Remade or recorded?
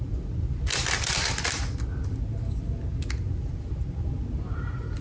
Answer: recorded